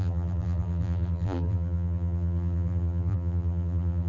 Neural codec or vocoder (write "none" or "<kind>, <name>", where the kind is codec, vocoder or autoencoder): vocoder, BigVGAN v2